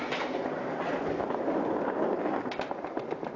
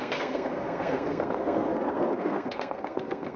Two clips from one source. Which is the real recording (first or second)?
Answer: first